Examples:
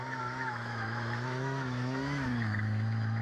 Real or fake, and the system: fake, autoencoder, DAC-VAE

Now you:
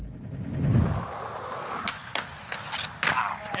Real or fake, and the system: real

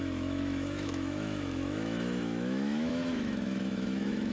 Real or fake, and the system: fake, autoencoder, DAC-VAE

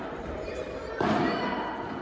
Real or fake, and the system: real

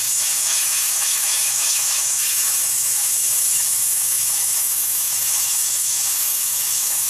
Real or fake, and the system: fake, autoencoder, DAC-VAE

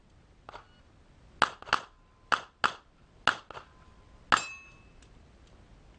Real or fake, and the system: real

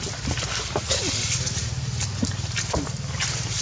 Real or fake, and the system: real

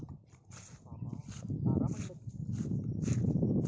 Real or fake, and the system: real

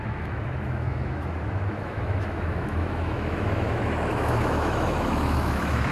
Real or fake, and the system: fake, autoencoder, DAC-VAE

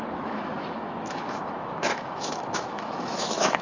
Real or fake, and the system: fake, autoencoder, DAC-VAE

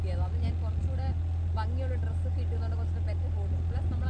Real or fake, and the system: real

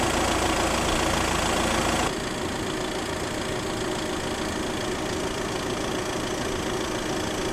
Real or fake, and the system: real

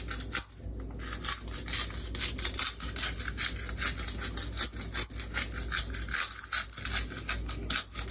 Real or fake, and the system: real